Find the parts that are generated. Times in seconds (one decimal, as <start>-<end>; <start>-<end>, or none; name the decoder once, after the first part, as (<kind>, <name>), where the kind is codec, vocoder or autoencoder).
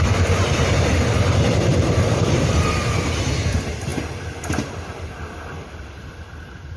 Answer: 1.7-2.7 (vocoder, BigVGAN v2)